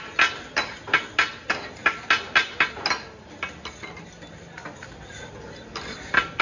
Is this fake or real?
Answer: real